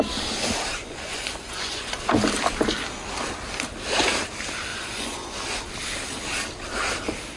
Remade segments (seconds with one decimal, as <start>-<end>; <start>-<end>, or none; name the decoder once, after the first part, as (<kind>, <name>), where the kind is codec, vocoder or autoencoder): 0.8-1.9 (vocoder, Vocos); 4.7-5.7